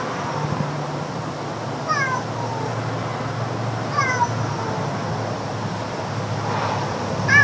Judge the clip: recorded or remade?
recorded